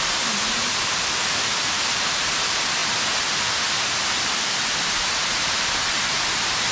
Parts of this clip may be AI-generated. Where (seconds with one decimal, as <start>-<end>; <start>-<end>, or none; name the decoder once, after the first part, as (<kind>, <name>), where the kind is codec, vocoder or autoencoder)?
none